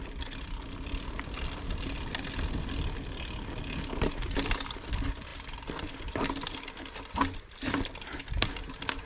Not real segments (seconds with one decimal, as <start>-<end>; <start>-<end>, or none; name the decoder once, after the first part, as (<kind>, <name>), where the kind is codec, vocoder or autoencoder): none